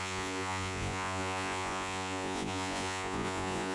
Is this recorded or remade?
remade